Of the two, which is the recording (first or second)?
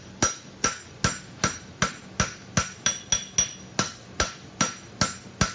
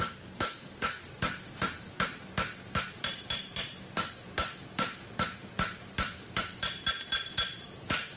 first